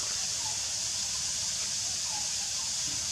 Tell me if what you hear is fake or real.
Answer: real